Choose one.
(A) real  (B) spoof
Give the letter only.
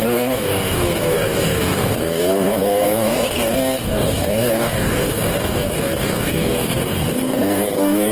B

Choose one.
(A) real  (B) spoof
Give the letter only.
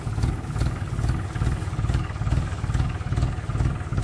B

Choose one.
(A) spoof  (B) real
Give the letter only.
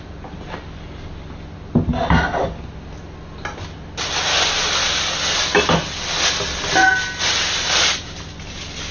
B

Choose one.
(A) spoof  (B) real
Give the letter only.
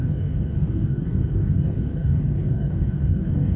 A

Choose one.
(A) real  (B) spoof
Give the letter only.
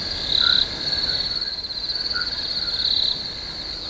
A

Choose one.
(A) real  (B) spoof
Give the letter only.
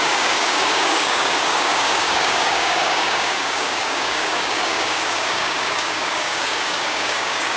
B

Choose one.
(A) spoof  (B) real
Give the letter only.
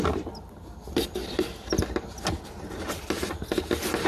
B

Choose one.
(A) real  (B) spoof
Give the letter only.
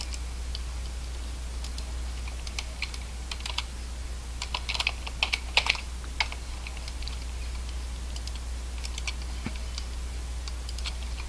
A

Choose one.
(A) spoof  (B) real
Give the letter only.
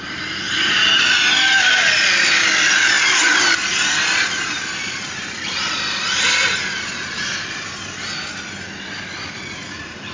B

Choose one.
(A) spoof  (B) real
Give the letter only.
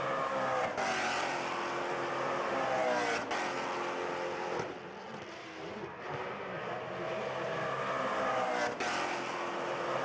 B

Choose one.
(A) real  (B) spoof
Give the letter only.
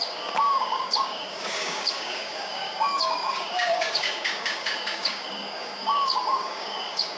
B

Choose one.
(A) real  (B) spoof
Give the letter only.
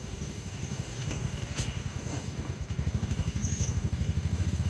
B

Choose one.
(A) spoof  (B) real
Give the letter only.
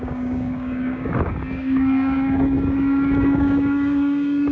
A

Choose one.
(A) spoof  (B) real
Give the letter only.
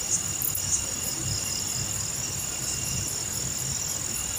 B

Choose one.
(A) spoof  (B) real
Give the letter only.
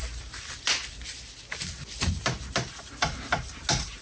B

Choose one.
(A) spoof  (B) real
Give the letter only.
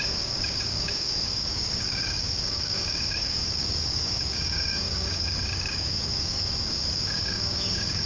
A